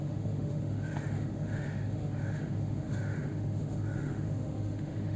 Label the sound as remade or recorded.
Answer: remade